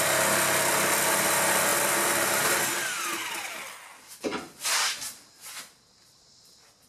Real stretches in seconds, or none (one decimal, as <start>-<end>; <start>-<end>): 0.0-6.9